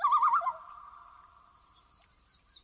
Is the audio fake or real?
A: fake